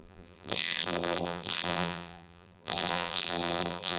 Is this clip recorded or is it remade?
remade